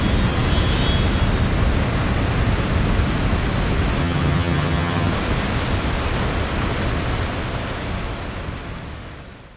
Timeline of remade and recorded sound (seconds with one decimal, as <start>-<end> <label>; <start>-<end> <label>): 0.0-4.0 recorded; 4.0-5.1 remade; 5.1-9.6 recorded